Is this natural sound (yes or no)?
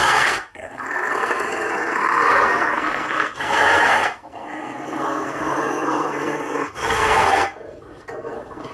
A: no